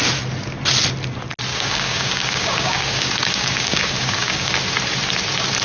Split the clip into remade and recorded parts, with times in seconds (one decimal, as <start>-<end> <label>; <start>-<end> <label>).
0.0-1.5 recorded; 1.5-4.5 remade; 4.5-5.6 recorded